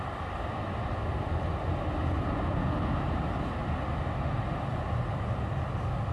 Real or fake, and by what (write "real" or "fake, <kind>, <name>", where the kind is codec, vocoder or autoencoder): real